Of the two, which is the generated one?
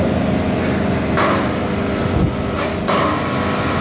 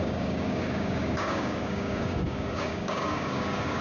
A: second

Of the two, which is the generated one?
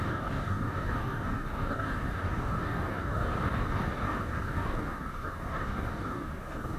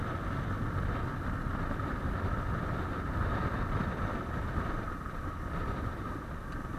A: first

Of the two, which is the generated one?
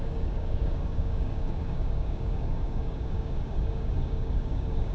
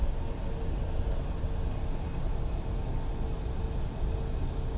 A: first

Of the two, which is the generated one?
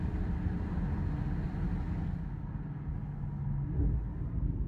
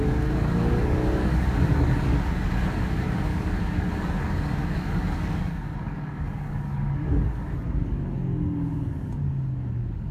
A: second